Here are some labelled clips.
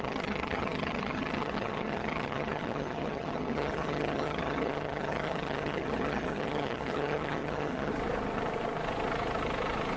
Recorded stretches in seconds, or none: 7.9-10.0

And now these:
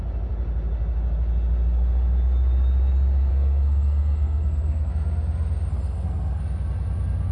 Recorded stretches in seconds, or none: 0.0-3.3; 4.9-5.7; 6.4-7.3

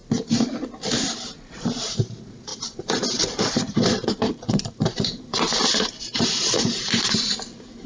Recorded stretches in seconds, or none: 0.0-1.4

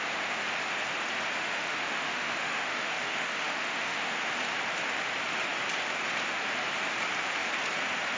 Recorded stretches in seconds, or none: 0.0-1.4; 4.2-8.2

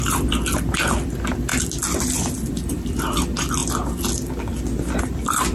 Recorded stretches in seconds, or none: 3.6-5.0

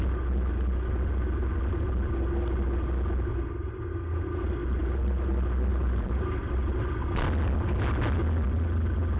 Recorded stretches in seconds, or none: 0.0-4.8; 5.3-5.7; 6.6-9.2

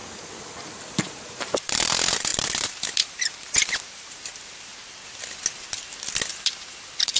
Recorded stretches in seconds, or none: 0.0-1.0; 4.7-6.3